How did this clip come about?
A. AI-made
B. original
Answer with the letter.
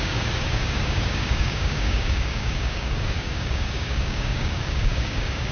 A